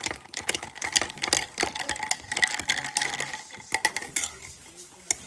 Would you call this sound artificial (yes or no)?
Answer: no